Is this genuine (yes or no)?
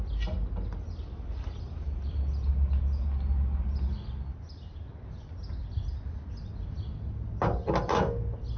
yes